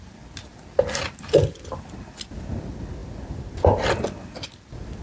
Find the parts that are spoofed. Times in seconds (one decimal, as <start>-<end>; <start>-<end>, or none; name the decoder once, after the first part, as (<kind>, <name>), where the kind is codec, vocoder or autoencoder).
none